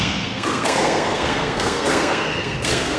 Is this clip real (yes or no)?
no